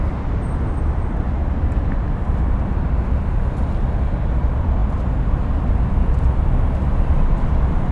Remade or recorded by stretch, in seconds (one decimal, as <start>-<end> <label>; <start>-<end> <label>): 0.0-7.9 recorded